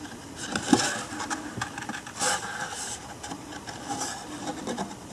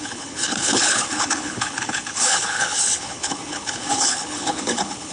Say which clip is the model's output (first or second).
second